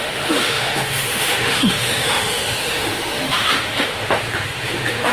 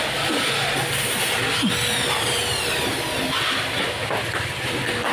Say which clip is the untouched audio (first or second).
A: second